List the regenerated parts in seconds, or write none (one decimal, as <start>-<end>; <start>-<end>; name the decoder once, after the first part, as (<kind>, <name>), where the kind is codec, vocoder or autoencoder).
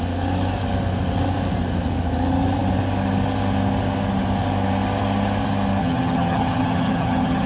5.8-7.5 (vocoder, HiFi-GAN)